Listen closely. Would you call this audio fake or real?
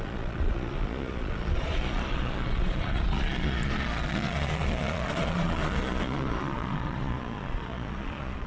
fake